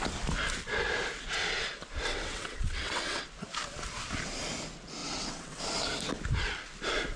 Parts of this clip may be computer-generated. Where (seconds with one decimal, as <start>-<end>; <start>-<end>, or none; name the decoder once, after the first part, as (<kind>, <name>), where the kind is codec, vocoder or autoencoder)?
2.1-3.2 (vocoder, WaveNeXt); 5.0-5.6